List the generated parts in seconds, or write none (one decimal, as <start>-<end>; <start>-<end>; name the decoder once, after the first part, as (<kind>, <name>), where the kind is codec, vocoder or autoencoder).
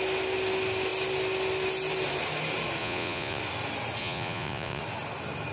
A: 2.8-3.4 (vocoder, Vocos); 4.0-4.8